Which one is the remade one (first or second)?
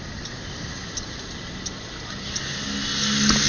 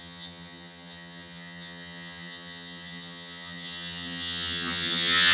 second